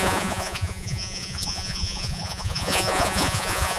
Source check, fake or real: fake